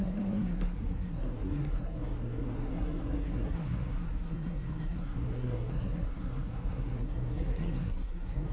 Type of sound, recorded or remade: remade